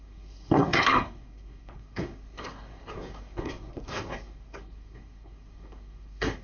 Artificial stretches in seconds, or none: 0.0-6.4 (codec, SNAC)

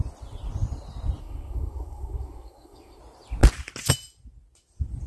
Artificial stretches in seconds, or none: 1.2-3.0 (codec, SNAC)

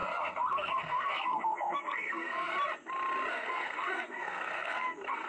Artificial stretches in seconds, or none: 0.0-2.5 (codec, SNAC); 3.3-5.3

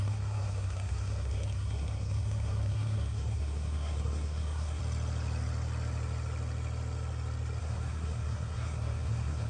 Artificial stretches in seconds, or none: 0.0-4.8 (codec, SNAC); 7.6-9.5

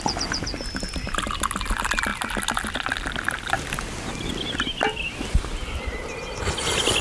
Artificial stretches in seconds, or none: none